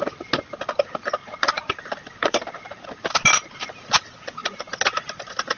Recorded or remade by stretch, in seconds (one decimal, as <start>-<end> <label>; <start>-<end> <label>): 0.0-1.2 recorded; 1.2-3.1 remade; 3.1-4.4 recorded; 4.4-5.6 remade